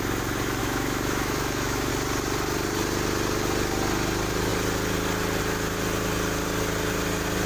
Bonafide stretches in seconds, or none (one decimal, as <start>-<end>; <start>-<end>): 0.0-0.6; 1.9-7.5